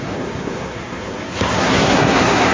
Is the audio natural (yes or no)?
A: no